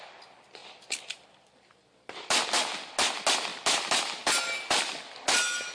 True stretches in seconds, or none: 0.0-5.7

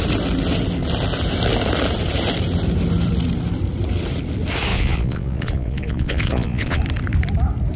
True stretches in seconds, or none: 0.0-4.7; 6.8-7.8

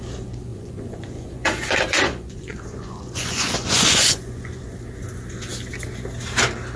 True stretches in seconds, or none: 0.0-0.5; 4.6-6.8

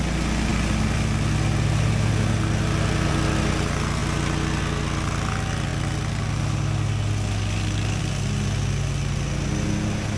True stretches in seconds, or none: 0.0-10.2

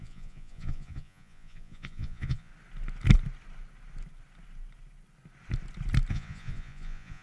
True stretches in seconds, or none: 2.5-6.1

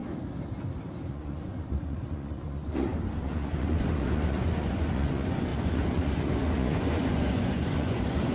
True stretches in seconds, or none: 0.0-1.1